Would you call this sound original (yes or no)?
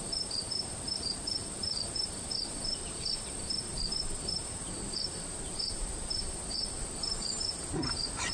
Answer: no